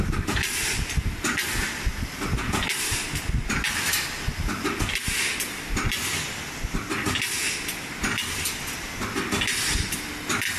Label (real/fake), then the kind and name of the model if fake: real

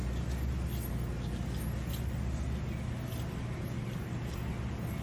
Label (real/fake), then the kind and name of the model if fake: real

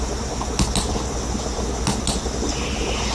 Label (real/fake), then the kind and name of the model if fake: real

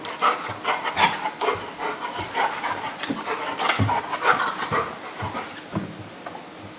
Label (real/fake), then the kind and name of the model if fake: real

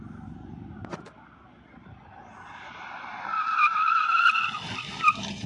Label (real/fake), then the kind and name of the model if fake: real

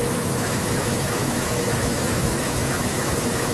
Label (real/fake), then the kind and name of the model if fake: fake, autoencoder, DAC-VAE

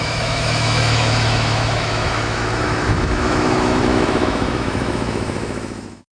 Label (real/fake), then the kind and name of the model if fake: fake, autoencoder, DAC-VAE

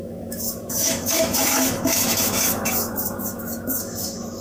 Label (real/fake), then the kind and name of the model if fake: fake, autoencoder, DAC-VAE